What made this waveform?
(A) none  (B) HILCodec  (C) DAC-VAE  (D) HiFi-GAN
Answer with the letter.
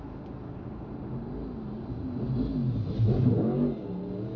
A